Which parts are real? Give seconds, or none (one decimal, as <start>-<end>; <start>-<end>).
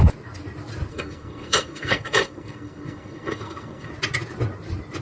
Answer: 0.0-0.9; 3.9-5.0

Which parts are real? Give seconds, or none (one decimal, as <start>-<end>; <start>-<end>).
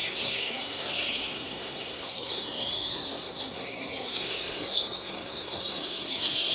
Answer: none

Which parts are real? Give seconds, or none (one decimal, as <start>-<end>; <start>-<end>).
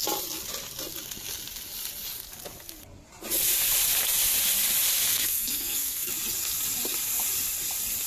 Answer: 0.0-5.1; 6.1-8.1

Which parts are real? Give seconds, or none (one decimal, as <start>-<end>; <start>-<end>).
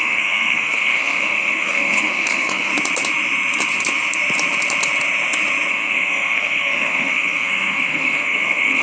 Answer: 2.7-5.7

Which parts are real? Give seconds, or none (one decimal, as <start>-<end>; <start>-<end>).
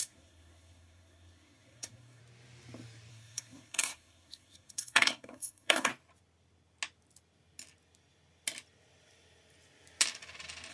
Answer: 2.2-3.1; 5.9-10.7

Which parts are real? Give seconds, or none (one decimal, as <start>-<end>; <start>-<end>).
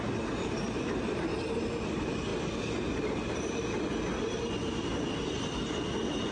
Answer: 0.0-6.3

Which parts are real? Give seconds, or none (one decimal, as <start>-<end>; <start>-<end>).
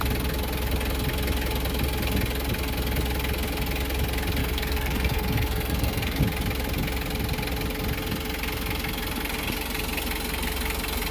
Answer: 0.0-4.4; 6.2-11.1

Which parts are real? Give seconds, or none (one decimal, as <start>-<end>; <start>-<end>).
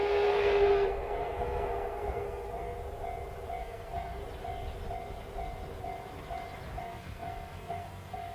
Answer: 2.8-3.6; 4.2-6.8